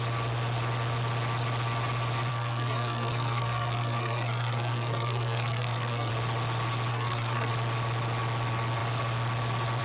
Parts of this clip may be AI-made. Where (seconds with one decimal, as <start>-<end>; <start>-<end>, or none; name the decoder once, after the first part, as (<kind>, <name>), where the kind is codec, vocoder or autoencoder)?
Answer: 2.3-6.1 (codec, SNAC); 6.9-7.5